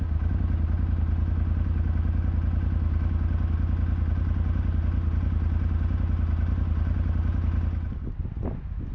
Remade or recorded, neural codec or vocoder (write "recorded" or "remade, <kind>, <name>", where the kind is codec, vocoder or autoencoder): recorded